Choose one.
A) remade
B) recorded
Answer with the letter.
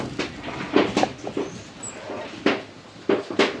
B